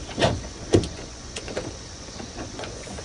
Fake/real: fake